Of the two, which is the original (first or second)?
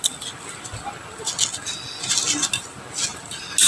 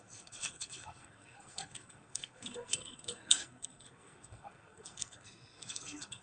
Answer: first